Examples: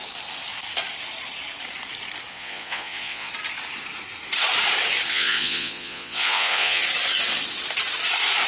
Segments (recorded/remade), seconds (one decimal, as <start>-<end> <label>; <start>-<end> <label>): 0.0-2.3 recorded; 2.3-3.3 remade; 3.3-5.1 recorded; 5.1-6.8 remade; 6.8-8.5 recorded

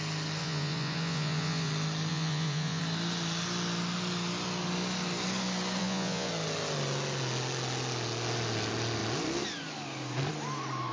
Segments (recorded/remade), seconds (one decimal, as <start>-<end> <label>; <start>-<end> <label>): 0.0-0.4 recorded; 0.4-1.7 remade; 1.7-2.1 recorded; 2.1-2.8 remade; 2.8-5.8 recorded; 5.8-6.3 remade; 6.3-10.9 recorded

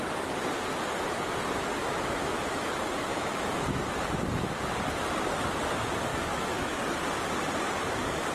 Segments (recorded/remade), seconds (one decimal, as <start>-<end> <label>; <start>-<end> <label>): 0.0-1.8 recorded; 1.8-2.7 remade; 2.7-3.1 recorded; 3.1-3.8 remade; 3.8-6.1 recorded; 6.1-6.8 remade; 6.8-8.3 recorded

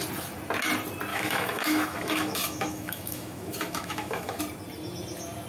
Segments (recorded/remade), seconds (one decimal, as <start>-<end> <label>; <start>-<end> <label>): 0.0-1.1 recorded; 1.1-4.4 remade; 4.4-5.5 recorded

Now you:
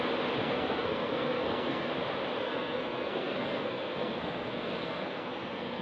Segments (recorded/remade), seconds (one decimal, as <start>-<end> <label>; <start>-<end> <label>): 0.0-0.4 recorded; 0.4-1.9 remade; 1.9-2.4 recorded; 2.4-5.8 remade